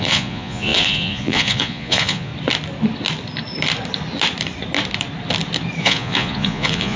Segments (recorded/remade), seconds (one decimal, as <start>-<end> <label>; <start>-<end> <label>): 0.0-2.3 remade; 2.3-5.8 recorded; 5.8-7.0 remade